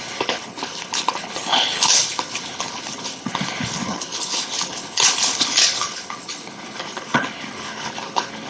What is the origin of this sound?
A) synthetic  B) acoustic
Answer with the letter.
A